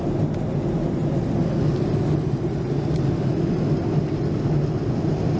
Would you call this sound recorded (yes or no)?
yes